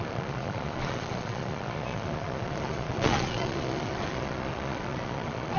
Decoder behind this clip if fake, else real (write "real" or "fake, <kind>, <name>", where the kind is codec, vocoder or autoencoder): fake, vocoder, Vocos